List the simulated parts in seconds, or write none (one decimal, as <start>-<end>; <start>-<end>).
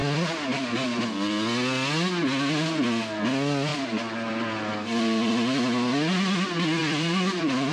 0.0-1.0; 3.7-5.3; 6.8-7.7